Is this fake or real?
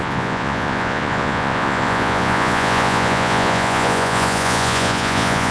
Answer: fake